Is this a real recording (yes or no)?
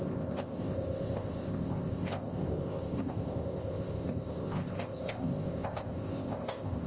no